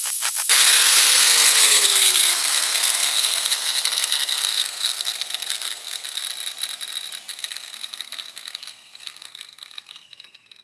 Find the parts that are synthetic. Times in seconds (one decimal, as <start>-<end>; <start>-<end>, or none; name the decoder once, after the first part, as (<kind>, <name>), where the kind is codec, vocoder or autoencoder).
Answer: 0.0-6.2 (codec, SNAC); 7.3-10.6